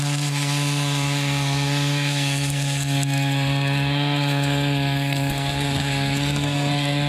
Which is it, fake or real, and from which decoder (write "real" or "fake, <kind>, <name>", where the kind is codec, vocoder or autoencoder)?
fake, codec, SNAC